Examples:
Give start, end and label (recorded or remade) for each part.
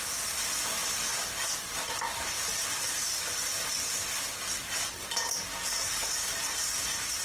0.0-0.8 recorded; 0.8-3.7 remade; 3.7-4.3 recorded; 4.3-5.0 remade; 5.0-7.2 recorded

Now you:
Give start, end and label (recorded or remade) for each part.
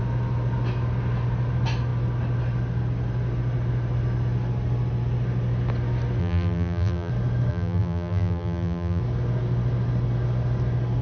0.0-6.2 recorded; 6.2-7.1 remade; 7.1-7.5 recorded; 7.5-9.0 remade; 9.0-11.0 recorded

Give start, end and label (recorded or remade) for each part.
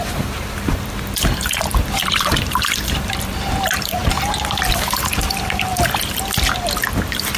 0.0-4.0 remade; 4.0-4.7 recorded; 4.7-5.7 remade; 5.7-7.4 recorded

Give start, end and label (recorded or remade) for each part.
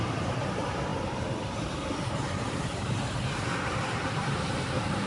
0.0-5.1 remade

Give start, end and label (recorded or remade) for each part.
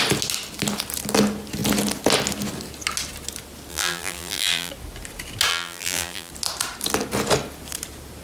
0.0-3.7 recorded; 3.7-4.7 remade; 4.7-5.5 recorded; 5.5-6.3 remade; 6.3-8.2 recorded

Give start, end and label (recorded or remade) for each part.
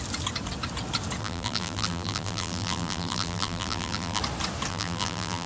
0.0-1.2 recorded; 1.2-4.2 remade; 4.2-4.7 recorded; 4.7-5.5 remade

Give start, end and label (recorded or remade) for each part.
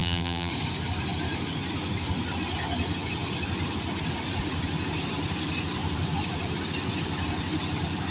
0.0-0.5 remade; 0.5-8.1 recorded